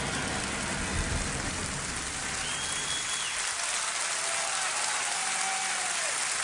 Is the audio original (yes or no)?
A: yes